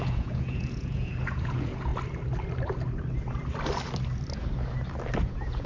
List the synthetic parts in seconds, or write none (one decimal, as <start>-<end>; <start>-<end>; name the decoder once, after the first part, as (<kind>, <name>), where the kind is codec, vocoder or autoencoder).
0.0-1.9 (vocoder, Vocos); 5.3-5.7

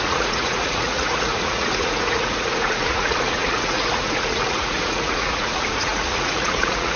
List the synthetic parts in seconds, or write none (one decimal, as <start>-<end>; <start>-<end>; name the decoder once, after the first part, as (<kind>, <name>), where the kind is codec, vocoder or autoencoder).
0.0-7.0 (vocoder, Vocos)

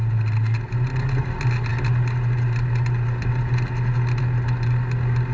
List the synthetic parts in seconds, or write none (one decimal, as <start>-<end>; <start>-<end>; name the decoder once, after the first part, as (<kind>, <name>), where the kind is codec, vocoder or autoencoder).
none